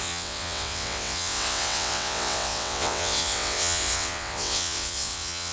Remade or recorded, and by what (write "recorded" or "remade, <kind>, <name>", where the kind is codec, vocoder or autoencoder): remade, vocoder, WaveNeXt